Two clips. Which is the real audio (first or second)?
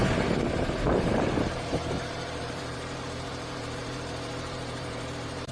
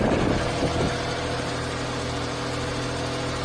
second